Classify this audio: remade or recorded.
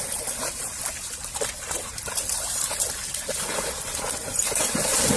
recorded